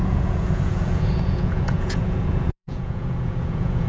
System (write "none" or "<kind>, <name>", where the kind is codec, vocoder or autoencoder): vocoder, Vocos